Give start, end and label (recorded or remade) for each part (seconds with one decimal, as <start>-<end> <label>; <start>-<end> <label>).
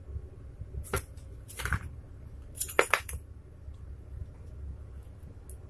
0.0-0.8 recorded; 0.8-4.2 remade; 4.2-5.7 recorded